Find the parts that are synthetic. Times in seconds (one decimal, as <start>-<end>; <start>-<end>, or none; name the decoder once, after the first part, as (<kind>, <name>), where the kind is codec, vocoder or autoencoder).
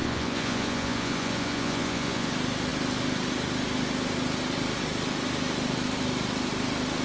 0.0-2.3 (vocoder, Vocos)